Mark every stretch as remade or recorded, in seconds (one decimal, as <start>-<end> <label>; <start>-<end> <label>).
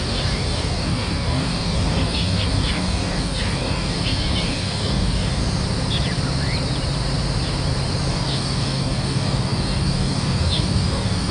0.0-5.4 remade; 5.4-8.1 recorded; 8.1-11.3 remade